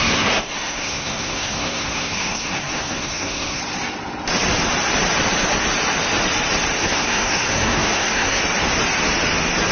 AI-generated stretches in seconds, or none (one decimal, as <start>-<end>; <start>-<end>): 0.0-3.6; 6.8-8.4